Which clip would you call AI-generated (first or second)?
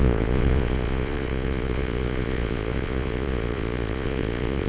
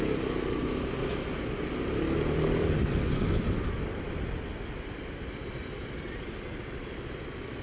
first